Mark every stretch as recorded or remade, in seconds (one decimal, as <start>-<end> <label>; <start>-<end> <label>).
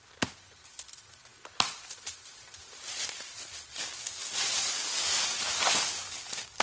0.0-3.7 recorded; 3.7-6.6 remade